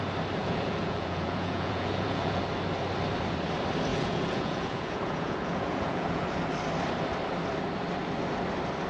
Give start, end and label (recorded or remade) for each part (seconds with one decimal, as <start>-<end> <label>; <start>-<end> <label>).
0.0-0.4 recorded; 0.4-2.4 remade; 2.4-3.9 recorded; 3.9-6.4 remade; 6.4-8.9 recorded